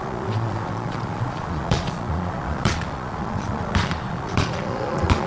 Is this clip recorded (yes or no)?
no